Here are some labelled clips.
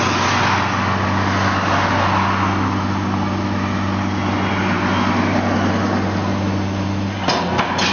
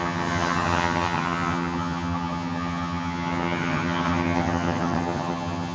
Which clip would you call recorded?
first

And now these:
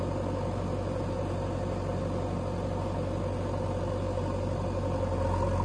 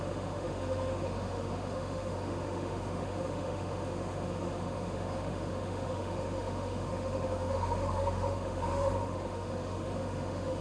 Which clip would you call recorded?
first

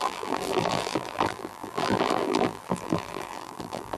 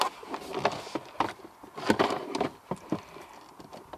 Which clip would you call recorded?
second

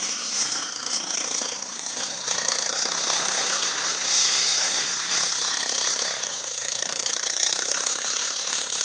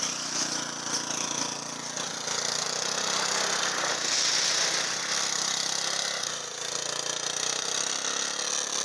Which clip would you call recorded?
second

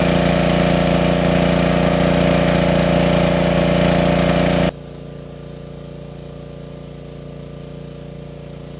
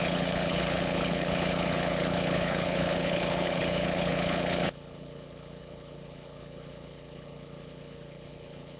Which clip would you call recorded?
first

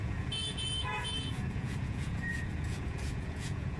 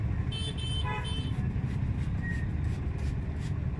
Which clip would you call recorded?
second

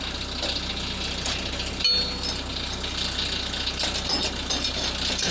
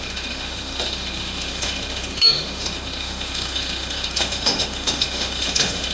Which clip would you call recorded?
first